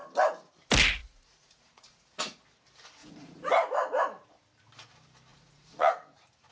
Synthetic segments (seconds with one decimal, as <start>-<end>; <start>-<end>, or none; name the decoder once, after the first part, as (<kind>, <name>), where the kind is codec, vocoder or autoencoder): 1.0-2.4 (vocoder, Vocos); 3.0-3.5; 5.3-5.9